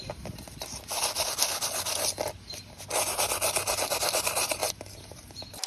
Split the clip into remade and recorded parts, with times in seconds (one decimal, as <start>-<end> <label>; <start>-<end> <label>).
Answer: 0.0-4.6 recorded; 4.6-5.7 remade